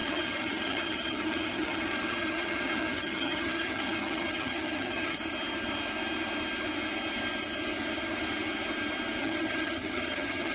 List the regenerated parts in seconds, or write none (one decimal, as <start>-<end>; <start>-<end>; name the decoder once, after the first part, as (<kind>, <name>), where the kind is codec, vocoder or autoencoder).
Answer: 0.0-5.2 (vocoder, HiFi-GAN); 9.2-10.5

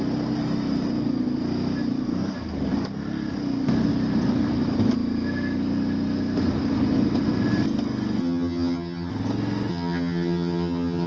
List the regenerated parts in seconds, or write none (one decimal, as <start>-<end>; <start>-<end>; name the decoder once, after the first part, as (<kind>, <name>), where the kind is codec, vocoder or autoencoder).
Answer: 8.2-9.1 (vocoder, HiFi-GAN); 9.7-11.1

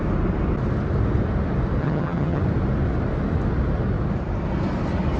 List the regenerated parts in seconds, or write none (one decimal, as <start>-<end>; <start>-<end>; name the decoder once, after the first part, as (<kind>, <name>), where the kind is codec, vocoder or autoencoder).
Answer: 1.8-2.4 (vocoder, HiFi-GAN)

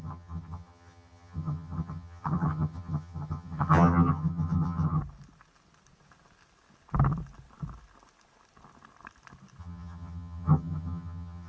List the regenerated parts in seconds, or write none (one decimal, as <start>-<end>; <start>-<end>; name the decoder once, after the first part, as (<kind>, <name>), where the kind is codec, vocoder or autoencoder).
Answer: 0.0-5.0 (vocoder, HiFi-GAN); 9.6-11.5

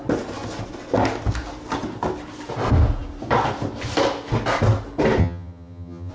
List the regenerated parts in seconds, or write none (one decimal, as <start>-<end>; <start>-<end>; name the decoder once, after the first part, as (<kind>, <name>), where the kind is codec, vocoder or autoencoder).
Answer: 5.2-6.1 (vocoder, HiFi-GAN)

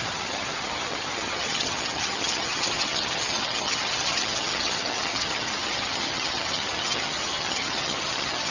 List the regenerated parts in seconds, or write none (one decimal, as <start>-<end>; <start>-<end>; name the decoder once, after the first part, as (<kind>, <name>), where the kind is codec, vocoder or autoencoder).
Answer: 0.0-8.5 (vocoder, HiFi-GAN)